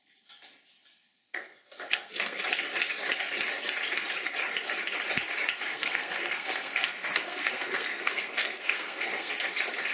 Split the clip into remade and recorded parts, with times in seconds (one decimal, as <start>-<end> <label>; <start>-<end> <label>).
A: 0.0-0.9 recorded; 0.9-2.4 remade; 2.4-5.7 recorded; 5.7-9.3 remade; 9.3-9.9 recorded